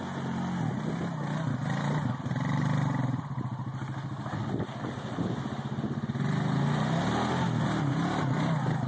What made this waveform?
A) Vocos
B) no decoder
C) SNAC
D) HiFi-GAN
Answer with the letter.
B